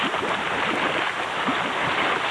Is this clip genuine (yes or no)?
yes